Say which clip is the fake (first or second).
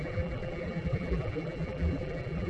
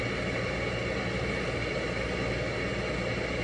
first